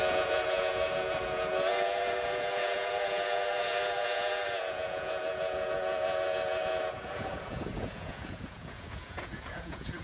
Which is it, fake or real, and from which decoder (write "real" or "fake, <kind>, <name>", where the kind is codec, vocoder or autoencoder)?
fake, vocoder, Vocos